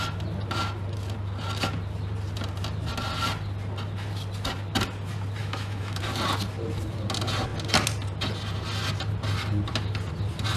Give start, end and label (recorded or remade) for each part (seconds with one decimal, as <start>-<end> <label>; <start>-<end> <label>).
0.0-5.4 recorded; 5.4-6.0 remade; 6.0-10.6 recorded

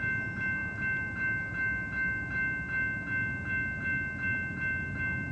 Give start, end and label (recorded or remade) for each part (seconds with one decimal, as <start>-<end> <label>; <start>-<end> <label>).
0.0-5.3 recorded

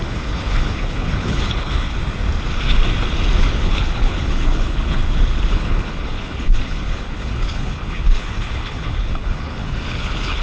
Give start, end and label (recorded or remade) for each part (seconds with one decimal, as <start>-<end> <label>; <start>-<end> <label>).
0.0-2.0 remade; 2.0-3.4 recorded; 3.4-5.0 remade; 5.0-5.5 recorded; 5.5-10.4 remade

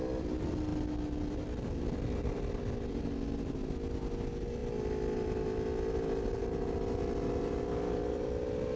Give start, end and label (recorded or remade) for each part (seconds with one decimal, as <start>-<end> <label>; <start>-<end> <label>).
0.0-8.8 recorded

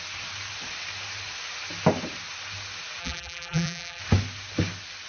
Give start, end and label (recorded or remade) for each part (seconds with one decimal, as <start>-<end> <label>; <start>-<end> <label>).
0.0-3.0 recorded; 3.0-4.0 remade; 4.0-5.1 recorded

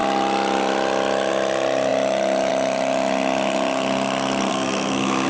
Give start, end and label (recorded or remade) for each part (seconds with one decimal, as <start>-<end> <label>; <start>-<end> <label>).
0.0-4.5 recorded; 4.5-5.3 remade